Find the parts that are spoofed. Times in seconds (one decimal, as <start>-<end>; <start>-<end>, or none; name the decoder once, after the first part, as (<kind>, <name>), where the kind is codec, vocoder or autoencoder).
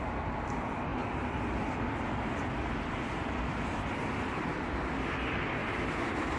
0.9-4.7 (vocoder, BigVGAN v2); 5.6-6.4